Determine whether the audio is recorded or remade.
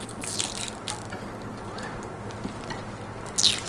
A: recorded